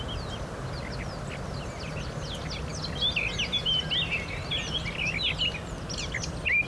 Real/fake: real